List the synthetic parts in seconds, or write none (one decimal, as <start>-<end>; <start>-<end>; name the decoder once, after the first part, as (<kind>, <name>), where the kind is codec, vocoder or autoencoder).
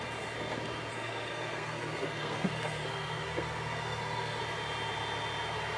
0.9-4.4 (codec, SNAC)